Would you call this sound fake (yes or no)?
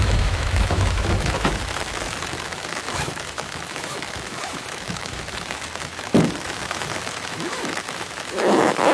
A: yes